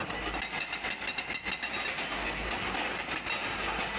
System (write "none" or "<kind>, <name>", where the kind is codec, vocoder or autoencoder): none